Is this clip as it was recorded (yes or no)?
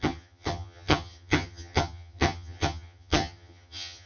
no